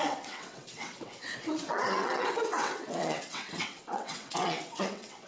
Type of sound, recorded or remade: remade